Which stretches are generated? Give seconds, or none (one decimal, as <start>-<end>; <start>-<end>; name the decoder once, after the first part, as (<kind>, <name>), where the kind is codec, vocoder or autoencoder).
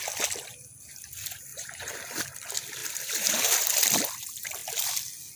1.5-2.2 (vocoder, BigVGAN v2); 2.8-3.5